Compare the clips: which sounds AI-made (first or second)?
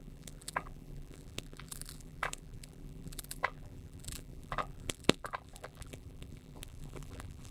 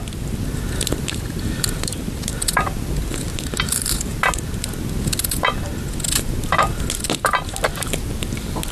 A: first